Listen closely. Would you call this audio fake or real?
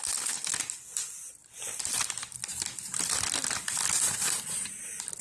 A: real